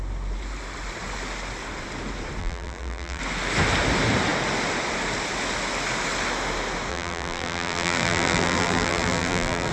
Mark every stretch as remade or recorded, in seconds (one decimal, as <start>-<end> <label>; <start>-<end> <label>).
0.0-2.4 recorded; 2.4-3.2 remade; 3.2-6.9 recorded; 6.9-9.7 remade

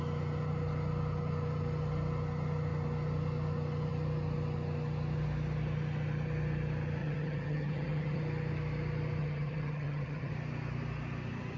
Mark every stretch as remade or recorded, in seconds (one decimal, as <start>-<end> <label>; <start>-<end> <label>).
0.0-7.0 recorded; 7.0-8.2 remade; 8.2-9.2 recorded; 9.2-10.3 remade; 10.3-11.6 recorded

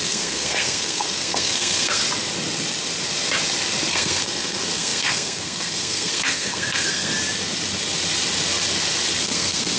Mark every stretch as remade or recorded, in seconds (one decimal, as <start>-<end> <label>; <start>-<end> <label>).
0.0-2.0 remade; 2.0-3.9 recorded; 3.9-7.1 remade; 7.1-9.2 recorded; 9.2-9.8 remade

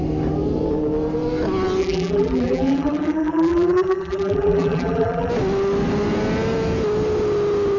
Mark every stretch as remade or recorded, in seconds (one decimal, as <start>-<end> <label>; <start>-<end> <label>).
0.0-1.8 recorded; 1.8-5.3 remade; 5.3-7.8 recorded

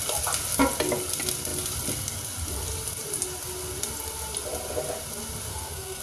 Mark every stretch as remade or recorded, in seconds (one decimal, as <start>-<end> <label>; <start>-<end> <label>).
0.0-5.5 recorded; 5.5-6.0 remade